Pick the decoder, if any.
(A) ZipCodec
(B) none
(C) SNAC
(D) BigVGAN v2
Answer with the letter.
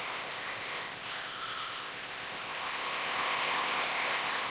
A